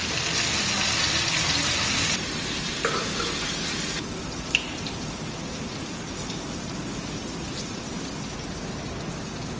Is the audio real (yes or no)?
yes